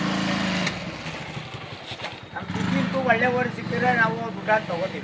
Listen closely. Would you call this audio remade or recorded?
recorded